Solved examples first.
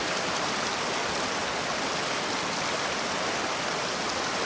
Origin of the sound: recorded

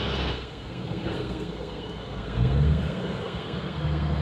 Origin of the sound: remade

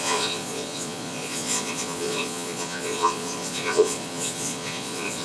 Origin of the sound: remade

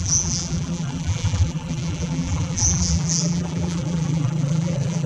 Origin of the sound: remade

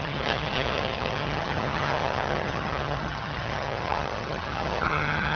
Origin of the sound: remade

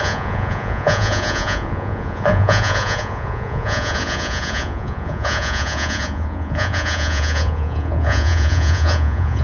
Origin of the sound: remade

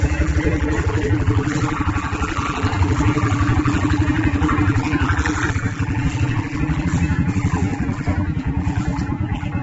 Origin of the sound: remade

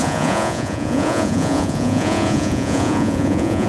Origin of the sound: remade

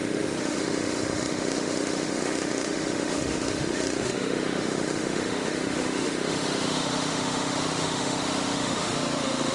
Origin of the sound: remade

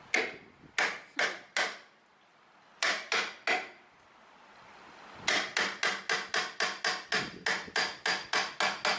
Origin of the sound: recorded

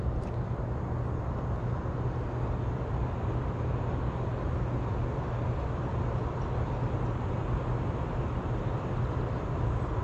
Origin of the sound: recorded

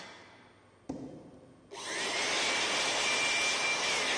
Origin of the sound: recorded